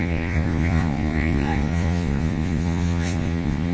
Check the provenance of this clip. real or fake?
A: fake